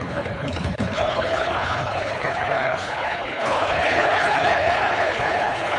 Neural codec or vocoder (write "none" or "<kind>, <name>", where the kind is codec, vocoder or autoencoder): codec, HILCodec